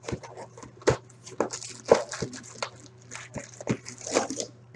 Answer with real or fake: real